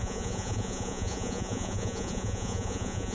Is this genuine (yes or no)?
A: no